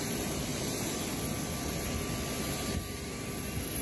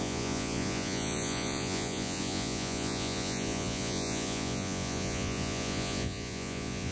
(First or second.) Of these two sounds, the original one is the first